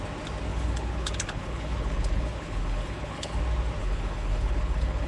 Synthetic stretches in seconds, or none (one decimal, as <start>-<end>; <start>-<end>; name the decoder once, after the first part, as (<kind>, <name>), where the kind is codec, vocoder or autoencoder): 0.5-3.4 (codec, HILCodec); 3.8-5.1